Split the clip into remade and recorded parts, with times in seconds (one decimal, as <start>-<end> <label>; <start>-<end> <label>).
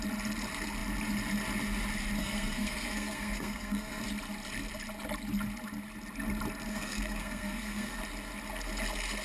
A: 0.0-2.2 recorded; 2.2-4.0 remade; 4.0-6.7 recorded; 6.7-8.0 remade; 8.0-9.2 recorded